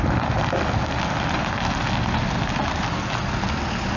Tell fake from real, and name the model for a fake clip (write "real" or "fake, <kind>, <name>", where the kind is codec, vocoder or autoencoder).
real